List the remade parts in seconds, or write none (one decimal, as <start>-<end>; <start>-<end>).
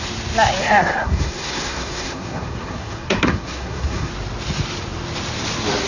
0.6-4.1